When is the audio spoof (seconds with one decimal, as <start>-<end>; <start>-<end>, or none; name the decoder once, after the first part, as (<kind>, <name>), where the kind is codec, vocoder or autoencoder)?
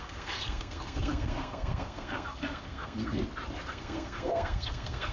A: 0.0-3.2 (codec, SNAC); 3.7-5.1